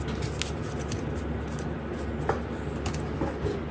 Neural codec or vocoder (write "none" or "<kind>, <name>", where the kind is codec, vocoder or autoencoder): none